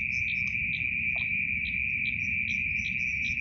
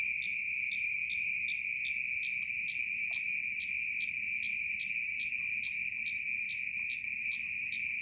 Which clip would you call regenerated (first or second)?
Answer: second